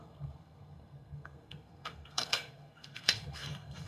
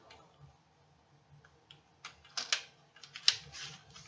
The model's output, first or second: first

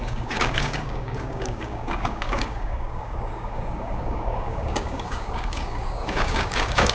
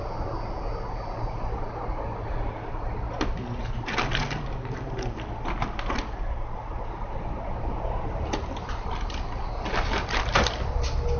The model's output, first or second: first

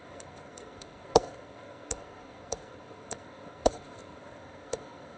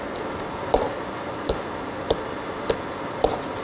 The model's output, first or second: first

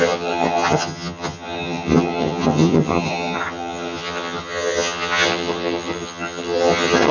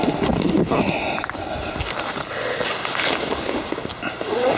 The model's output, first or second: first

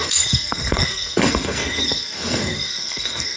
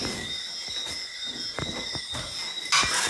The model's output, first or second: first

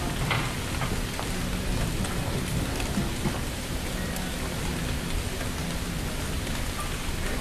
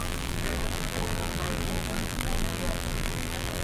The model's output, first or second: second